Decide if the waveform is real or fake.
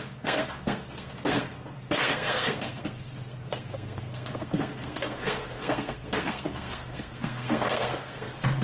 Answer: fake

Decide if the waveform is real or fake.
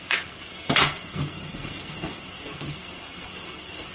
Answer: fake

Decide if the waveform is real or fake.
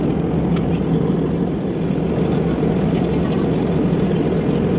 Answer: real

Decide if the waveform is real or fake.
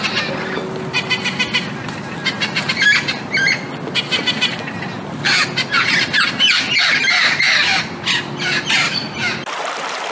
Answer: real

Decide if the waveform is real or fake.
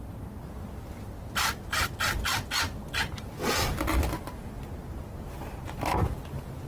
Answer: real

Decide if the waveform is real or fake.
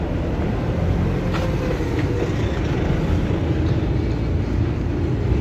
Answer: real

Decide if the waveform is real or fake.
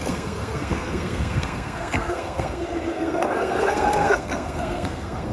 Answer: fake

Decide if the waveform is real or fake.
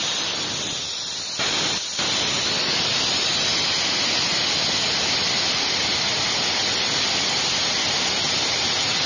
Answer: real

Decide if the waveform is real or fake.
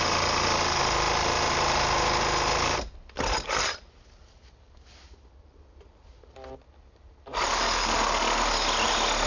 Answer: real